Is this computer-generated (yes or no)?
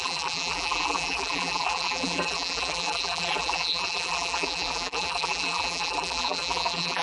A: yes